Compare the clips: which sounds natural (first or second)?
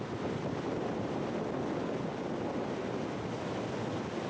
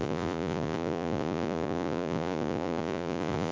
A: first